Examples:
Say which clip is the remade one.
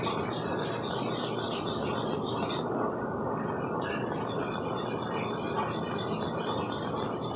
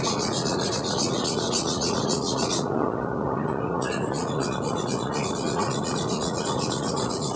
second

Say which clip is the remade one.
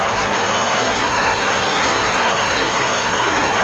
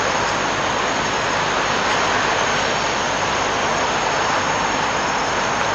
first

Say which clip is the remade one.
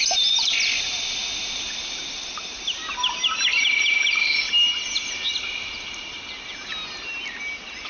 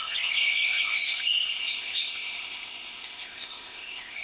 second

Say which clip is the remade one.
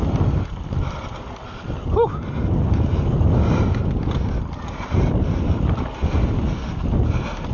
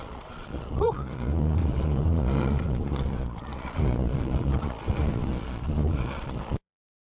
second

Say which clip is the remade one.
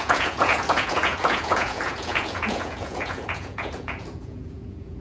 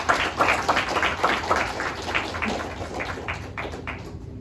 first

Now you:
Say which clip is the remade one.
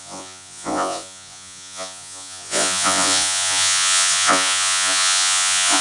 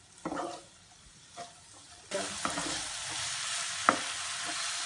first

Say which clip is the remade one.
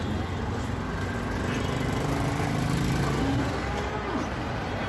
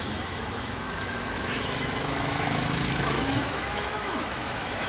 second